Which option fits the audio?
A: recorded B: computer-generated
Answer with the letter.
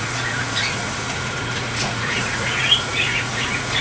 B